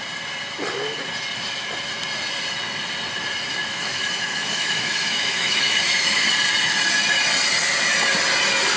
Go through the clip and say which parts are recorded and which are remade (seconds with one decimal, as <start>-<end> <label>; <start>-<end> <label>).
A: 0.0-3.7 recorded; 3.7-6.3 remade; 6.3-8.8 recorded